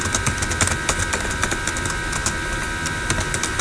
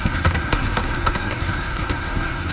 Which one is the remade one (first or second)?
second